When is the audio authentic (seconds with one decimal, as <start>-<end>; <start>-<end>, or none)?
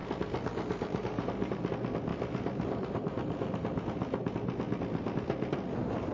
1.7-2.1; 4.3-6.1